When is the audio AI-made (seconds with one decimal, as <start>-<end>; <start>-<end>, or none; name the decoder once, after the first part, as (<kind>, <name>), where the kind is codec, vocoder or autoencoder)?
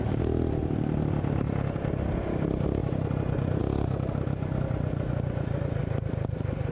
none